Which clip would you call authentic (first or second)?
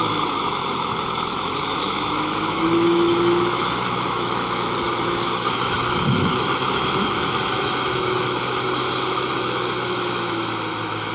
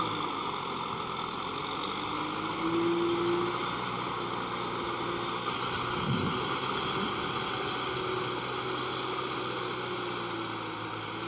second